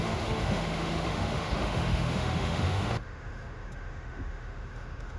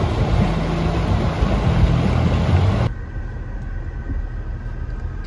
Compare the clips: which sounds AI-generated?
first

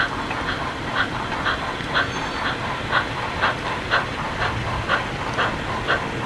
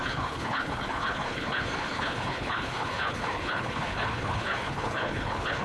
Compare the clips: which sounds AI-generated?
second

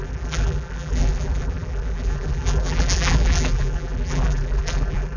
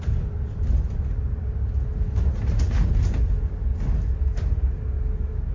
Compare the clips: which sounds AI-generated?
first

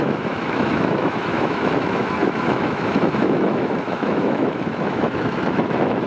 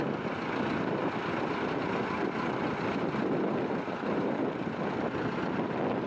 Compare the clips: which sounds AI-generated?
first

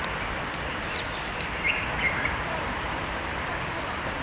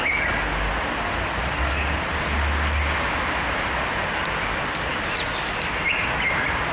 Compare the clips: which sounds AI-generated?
first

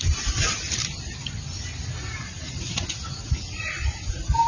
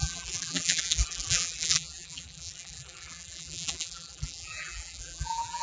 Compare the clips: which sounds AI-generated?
second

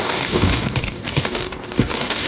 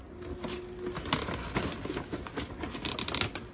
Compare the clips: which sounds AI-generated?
first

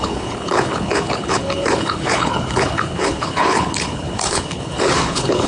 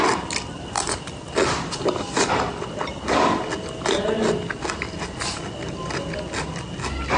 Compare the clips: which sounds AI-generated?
first